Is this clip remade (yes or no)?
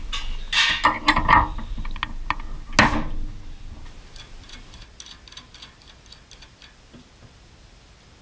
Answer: no